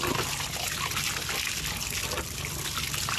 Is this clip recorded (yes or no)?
yes